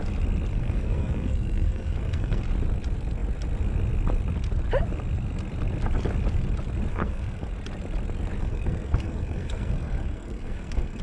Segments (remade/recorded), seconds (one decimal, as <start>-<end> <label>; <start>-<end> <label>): 0.0-0.5 recorded; 0.5-2.4 remade; 2.4-6.9 recorded; 6.9-7.5 remade; 7.5-8.4 recorded; 8.4-11.0 remade

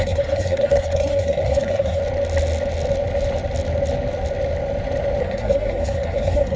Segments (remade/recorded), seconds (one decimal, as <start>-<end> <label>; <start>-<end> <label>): 0.0-2.0 remade; 2.0-5.2 recorded; 5.2-6.6 remade

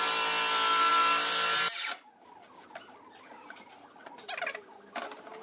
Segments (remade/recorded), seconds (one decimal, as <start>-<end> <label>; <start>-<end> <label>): 0.0-5.4 recorded

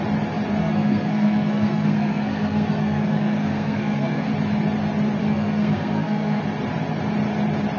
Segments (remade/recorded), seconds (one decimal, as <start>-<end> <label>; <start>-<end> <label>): 0.0-0.6 recorded; 0.6-4.3 remade; 4.3-5.2 recorded; 5.2-6.4 remade; 6.4-7.8 recorded